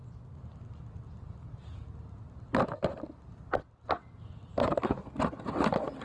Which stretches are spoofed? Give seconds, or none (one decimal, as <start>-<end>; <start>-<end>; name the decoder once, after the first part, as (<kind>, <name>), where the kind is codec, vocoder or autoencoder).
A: none